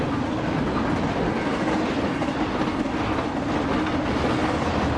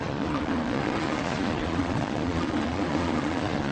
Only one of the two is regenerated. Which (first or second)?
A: second